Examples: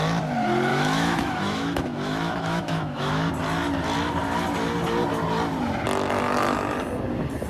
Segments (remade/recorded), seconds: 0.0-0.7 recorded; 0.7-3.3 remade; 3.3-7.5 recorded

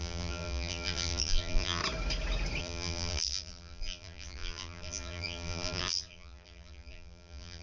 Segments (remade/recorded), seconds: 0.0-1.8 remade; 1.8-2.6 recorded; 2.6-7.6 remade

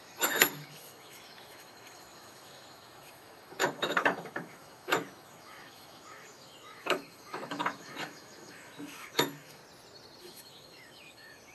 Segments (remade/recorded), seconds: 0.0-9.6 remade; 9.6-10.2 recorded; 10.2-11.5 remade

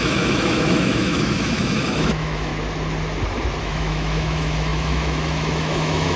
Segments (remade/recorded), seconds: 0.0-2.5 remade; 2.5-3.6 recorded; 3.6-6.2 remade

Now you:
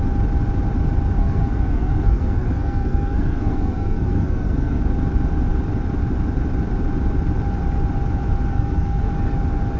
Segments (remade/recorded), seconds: 0.0-1.2 recorded; 1.2-4.8 remade; 4.8-8.5 recorded; 8.5-9.1 remade; 9.1-9.8 recorded

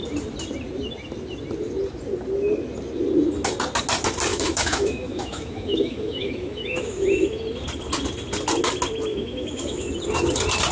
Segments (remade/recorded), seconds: 0.0-4.3 recorded; 4.3-7.4 remade; 7.4-9.1 recorded; 9.1-9.9 remade; 9.9-10.7 recorded

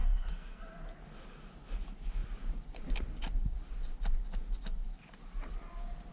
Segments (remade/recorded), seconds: 0.0-0.6 remade; 0.6-6.1 recorded